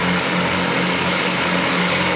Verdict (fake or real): fake